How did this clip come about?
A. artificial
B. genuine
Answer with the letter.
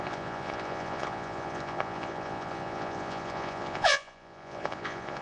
A